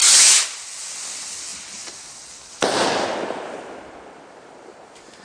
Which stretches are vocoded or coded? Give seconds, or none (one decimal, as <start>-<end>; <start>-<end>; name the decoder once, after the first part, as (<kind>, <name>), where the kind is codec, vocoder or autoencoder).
none